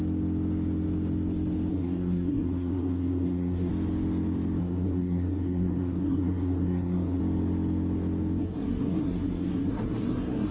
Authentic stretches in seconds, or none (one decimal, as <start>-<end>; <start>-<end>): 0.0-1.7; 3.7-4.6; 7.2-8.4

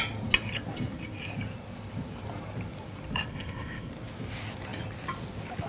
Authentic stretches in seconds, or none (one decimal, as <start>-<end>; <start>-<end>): 0.0-3.3; 3.9-5.7

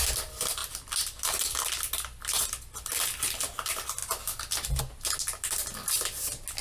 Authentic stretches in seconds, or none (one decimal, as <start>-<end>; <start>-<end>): 0.0-6.6

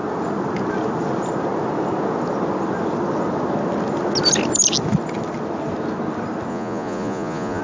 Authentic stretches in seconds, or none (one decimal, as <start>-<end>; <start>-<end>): 0.0-6.5

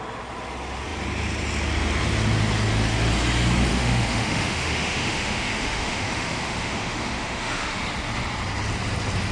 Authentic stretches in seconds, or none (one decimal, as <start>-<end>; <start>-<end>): 0.0-3.7; 7.8-9.3